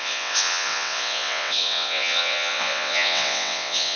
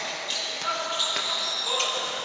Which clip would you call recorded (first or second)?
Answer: second